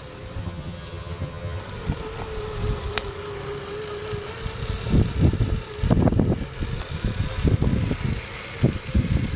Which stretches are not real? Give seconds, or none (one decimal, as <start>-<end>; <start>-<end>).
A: 0.4-1.6